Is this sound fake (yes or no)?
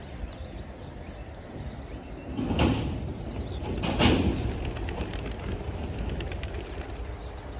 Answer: no